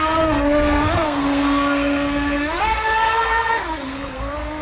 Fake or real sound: fake